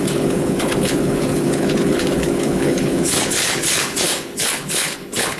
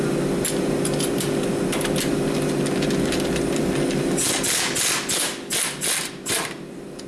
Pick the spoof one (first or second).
first